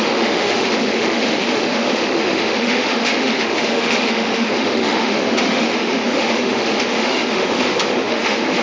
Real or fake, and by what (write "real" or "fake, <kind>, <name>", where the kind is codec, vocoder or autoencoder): fake, autoencoder, DAC-VAE